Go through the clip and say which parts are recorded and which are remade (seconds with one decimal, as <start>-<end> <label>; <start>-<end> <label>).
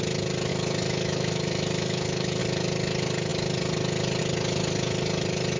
0.0-0.5 recorded; 0.5-2.4 remade; 2.4-5.6 recorded